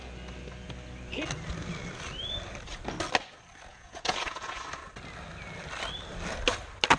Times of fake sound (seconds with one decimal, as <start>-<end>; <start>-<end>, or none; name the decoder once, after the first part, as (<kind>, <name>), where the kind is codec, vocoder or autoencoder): 3.7-4.6 (vocoder, Vocos)